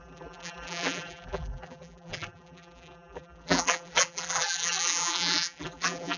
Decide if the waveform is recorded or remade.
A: remade